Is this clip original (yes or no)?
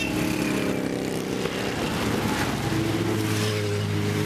yes